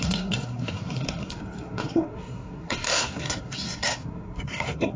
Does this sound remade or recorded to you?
remade